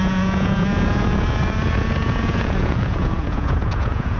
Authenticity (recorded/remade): remade